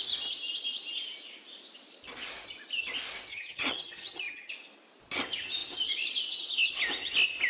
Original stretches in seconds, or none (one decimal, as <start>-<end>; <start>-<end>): 0.0-3.3; 4.5-7.5